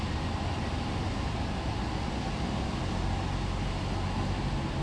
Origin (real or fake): real